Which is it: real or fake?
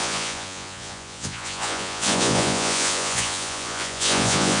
fake